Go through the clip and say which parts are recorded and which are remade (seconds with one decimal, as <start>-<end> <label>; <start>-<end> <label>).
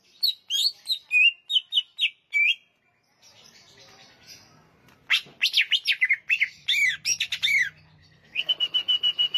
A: 0.0-8.0 recorded; 8.0-8.5 remade; 8.5-9.4 recorded